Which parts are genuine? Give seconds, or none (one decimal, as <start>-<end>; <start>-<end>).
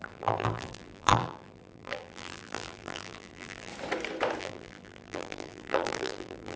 3.7-4.4